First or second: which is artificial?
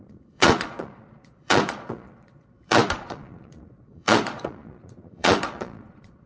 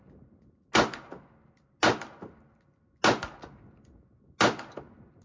first